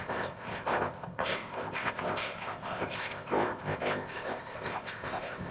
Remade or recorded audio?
remade